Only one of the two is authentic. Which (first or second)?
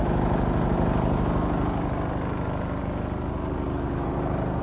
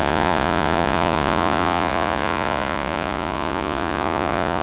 first